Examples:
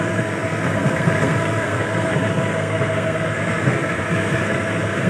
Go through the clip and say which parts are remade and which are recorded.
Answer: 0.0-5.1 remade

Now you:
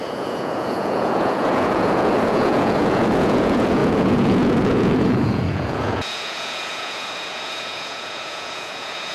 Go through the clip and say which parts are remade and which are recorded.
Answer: 0.0-9.1 remade

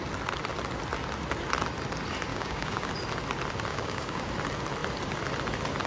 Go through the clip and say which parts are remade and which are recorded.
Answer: 0.0-2.3 recorded; 2.3-2.9 remade; 2.9-3.7 recorded; 3.7-4.2 remade; 4.2-5.9 recorded

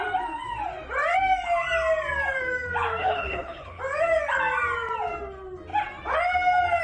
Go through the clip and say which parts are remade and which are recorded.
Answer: 0.0-3.0 recorded; 3.0-3.8 remade; 3.8-6.8 recorded

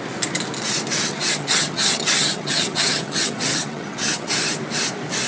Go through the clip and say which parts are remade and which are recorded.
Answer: 0.0-1.1 recorded; 1.1-4.3 remade; 4.3-5.3 recorded

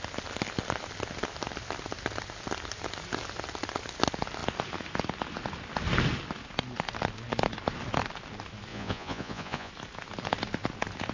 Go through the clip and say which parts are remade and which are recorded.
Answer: 0.0-8.7 recorded; 8.7-9.7 remade; 9.7-11.1 recorded